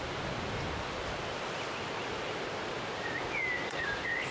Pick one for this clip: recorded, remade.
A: recorded